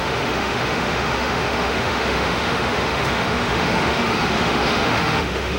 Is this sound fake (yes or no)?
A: yes